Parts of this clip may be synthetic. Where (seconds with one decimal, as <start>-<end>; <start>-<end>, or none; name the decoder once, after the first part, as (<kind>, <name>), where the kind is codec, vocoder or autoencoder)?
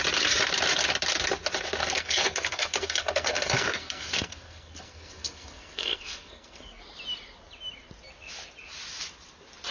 1.8-6.8 (codec, SNAC)